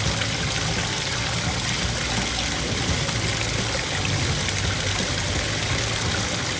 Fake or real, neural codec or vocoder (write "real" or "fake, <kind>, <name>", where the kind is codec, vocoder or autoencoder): real